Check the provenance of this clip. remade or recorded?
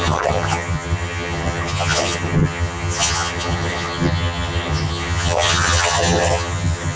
remade